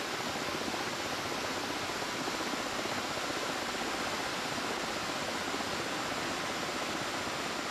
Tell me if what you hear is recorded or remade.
recorded